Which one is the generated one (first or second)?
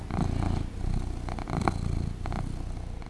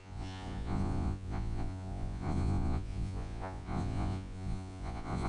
second